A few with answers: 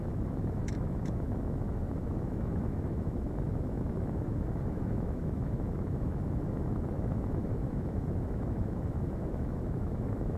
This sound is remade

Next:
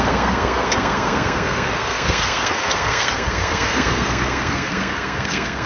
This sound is remade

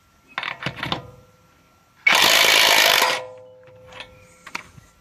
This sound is recorded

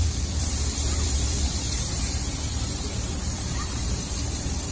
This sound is remade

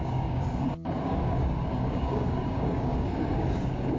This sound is remade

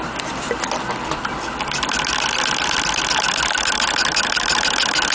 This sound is recorded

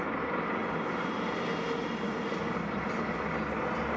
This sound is recorded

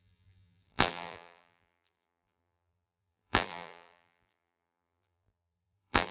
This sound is remade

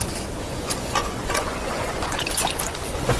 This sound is remade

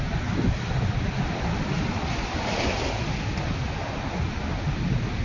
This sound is recorded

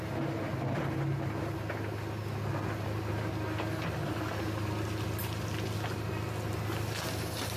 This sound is recorded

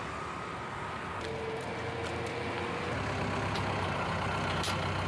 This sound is recorded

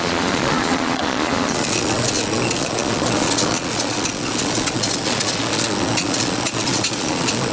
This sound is remade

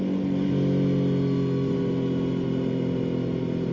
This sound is recorded